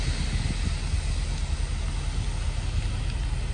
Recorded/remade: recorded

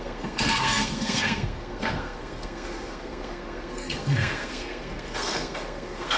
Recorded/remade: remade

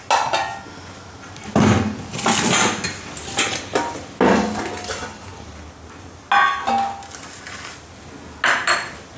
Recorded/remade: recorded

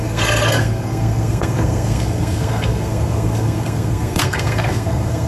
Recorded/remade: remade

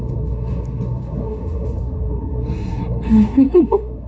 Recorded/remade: remade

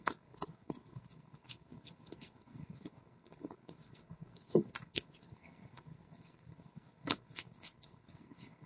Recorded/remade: remade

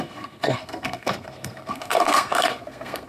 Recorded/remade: remade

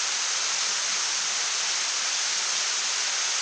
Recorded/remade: recorded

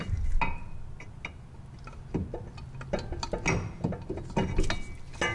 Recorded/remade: recorded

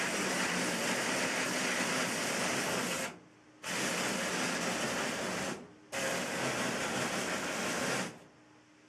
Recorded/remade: recorded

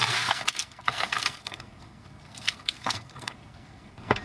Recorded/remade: remade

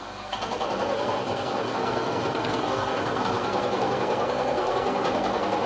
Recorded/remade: remade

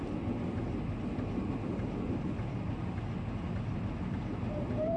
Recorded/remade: recorded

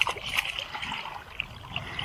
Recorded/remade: recorded